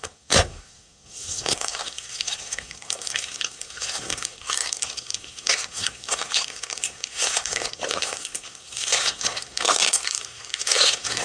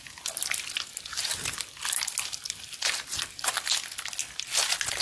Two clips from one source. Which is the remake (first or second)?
first